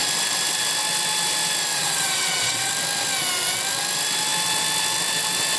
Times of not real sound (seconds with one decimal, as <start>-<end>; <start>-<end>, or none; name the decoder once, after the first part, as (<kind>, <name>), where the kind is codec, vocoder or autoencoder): 1.7-2.7 (vocoder, WaveNeXt)